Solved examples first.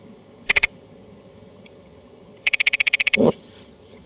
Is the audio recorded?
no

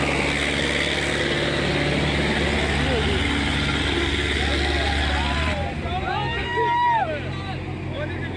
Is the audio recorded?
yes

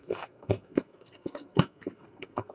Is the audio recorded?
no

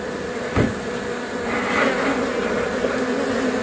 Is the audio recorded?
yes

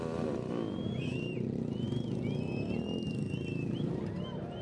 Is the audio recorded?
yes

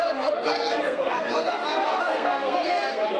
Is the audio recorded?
no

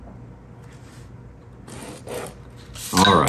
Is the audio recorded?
yes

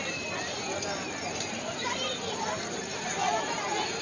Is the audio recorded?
no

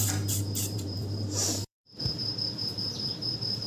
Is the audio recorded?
no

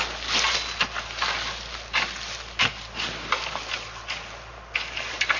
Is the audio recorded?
yes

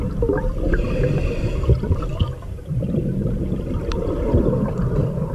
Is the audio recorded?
yes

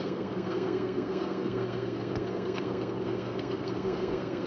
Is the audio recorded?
no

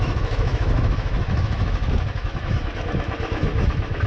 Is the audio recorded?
no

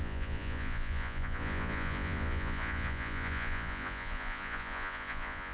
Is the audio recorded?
no